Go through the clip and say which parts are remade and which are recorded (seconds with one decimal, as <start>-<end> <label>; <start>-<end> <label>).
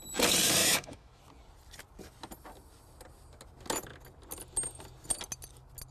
0.0-0.6 recorded; 0.6-1.2 remade; 1.2-5.9 recorded